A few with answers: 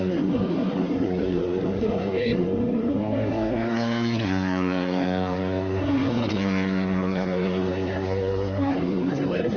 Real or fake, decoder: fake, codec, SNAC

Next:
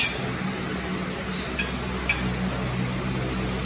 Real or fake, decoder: real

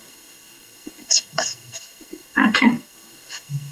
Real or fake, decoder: fake, codec, SNAC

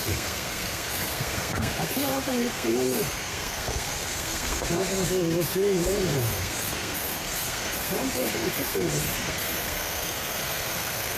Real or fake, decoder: fake, codec, SNAC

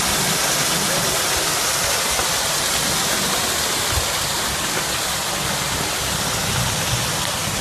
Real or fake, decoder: real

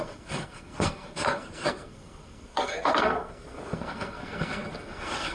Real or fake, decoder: fake, codec, SNAC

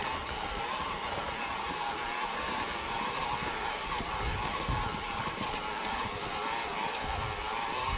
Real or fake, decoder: real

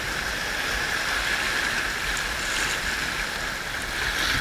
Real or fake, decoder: real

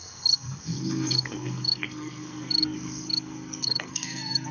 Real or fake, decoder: fake, codec, SNAC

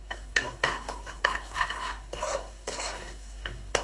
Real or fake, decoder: fake, codec, SNAC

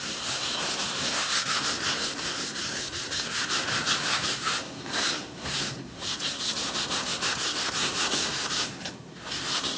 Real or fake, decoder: fake, codec, SNAC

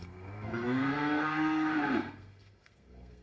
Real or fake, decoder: fake, codec, SNAC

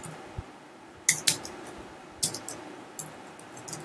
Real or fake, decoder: real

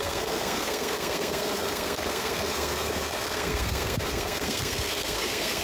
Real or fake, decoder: fake, codec, SNAC